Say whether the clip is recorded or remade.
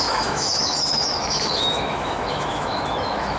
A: remade